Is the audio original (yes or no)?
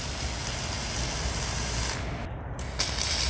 yes